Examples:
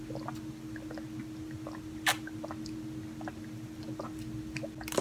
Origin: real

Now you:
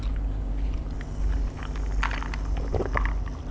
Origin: real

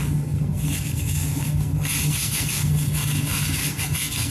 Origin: fake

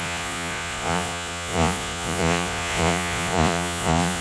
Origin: fake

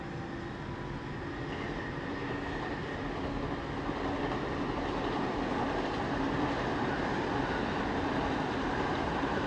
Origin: real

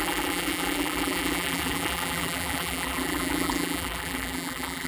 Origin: fake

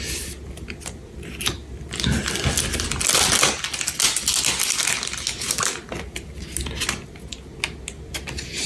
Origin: real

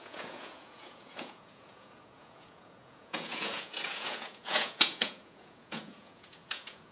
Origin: fake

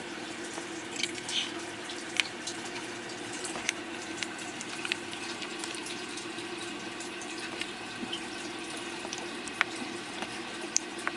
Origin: fake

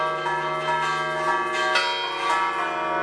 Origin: real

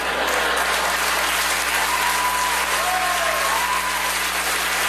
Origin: real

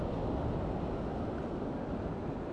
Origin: real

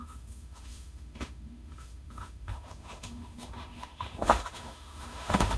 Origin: fake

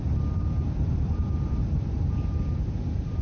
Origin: fake